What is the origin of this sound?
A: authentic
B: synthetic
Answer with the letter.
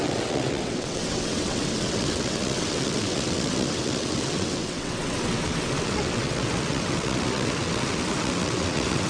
B